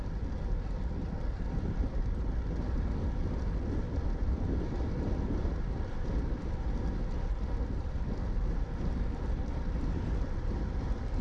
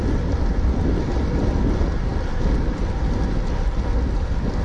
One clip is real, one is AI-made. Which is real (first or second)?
second